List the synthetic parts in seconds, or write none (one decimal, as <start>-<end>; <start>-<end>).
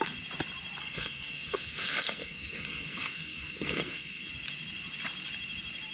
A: 0.8-4.3